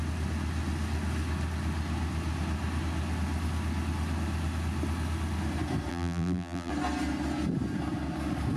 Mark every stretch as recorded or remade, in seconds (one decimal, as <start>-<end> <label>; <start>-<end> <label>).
0.0-5.9 recorded; 5.9-6.7 remade; 6.7-8.6 recorded